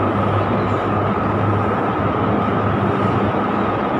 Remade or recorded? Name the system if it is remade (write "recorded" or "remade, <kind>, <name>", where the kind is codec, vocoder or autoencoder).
recorded